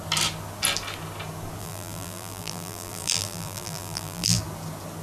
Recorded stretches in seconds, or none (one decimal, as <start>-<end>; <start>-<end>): 0.0-1.6; 4.4-5.0